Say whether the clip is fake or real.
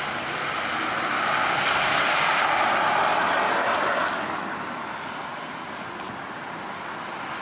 real